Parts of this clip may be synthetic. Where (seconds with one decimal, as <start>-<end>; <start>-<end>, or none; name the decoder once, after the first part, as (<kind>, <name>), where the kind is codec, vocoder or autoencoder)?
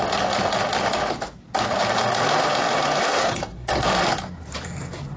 3.2-3.7 (codec, SNAC)